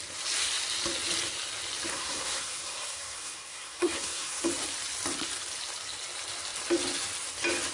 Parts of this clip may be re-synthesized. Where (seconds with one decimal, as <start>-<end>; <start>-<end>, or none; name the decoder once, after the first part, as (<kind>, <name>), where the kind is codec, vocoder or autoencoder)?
1.9-4.4 (codec, SNAC)